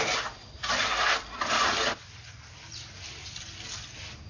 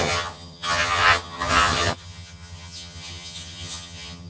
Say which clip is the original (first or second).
first